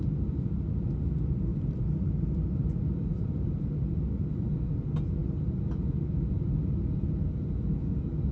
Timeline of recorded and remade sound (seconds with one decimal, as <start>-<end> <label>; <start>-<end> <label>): 0.0-8.3 recorded